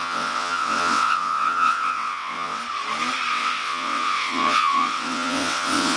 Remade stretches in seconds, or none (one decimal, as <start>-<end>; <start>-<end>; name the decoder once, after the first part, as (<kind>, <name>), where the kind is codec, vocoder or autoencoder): 0.0-2.6 (vocoder, WaveNeXt); 3.3-6.0